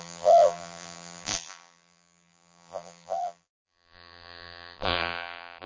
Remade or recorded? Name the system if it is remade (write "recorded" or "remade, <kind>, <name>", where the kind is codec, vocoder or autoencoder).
remade, vocoder, BigVGAN v2